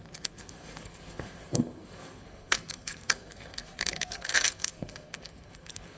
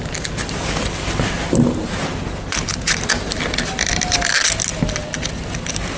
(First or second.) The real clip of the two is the second